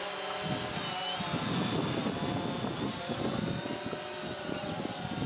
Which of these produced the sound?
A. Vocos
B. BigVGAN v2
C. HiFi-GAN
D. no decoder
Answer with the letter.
D